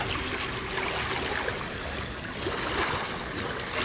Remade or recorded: recorded